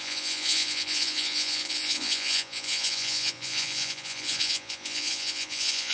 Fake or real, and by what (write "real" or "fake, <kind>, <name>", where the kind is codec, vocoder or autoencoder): fake, vocoder, Vocos